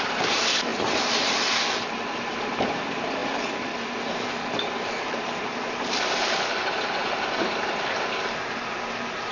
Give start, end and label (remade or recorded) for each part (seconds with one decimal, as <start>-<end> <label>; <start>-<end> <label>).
0.0-9.3 remade